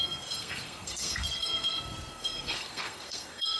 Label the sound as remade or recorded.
remade